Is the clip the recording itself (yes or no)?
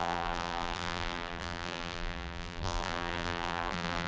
no